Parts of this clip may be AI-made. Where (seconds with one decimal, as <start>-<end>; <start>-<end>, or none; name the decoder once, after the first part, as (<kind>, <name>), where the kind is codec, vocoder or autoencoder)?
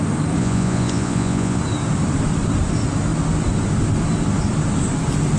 0.4-1.6 (vocoder, Vocos)